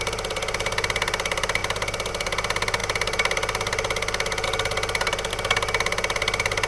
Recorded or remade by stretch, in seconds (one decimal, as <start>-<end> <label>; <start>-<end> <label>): 0.0-6.7 recorded